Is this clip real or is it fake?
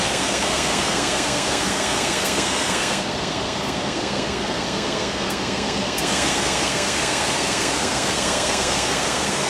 fake